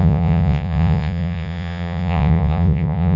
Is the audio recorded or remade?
remade